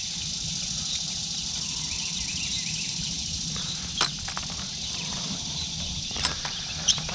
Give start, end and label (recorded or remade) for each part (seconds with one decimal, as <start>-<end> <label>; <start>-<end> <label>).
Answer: 0.0-2.5 recorded; 2.5-4.0 remade; 4.0-4.8 recorded; 4.8-6.4 remade; 6.4-7.1 recorded